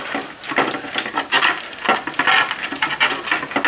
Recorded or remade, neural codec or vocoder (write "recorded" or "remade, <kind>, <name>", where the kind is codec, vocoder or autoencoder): recorded